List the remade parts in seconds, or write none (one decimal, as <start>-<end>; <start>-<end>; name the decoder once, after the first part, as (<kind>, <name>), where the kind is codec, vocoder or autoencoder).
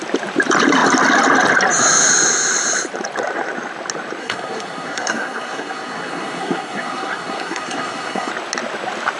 4.2-8.3 (codec, SNAC)